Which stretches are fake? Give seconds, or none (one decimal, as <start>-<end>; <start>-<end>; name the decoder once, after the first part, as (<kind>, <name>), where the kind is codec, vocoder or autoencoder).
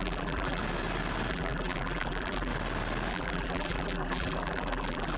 0.0-0.6 (vocoder, BigVGAN v2); 1.3-2.5; 3.1-5.2